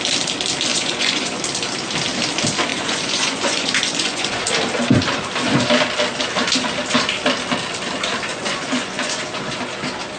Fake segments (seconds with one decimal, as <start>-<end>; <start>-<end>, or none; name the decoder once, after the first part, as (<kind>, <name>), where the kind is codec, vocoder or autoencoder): 0.7-1.4 (vocoder, Vocos); 2.7-4.4; 8.3-9.2